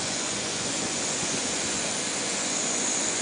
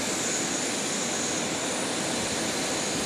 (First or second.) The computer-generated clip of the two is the first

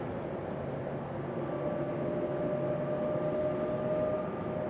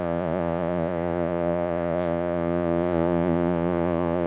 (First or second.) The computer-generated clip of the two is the second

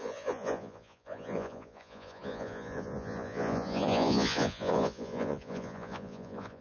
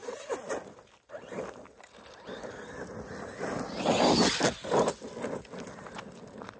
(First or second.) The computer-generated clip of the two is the first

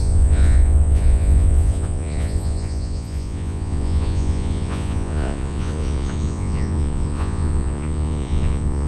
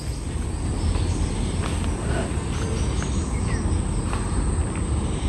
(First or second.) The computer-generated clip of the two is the first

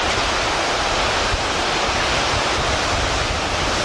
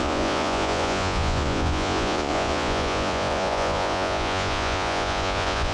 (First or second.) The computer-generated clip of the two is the second